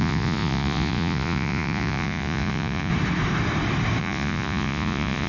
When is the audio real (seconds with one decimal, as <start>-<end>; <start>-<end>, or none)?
2.9-4.0